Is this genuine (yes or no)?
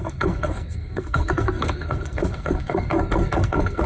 no